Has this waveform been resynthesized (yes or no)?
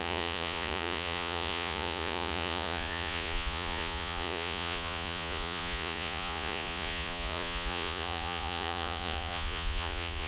yes